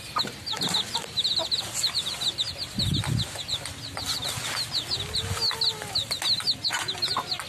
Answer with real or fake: real